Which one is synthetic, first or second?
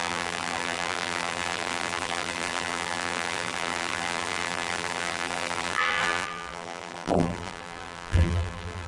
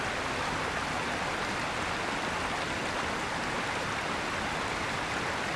first